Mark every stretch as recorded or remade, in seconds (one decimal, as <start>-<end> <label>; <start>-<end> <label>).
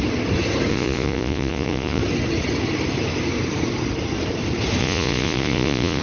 0.0-0.7 recorded; 0.7-2.0 remade; 2.0-4.8 recorded; 4.8-6.0 remade